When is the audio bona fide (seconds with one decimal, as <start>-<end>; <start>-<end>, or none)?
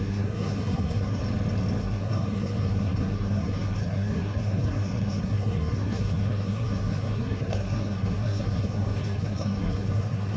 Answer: 1.2-1.8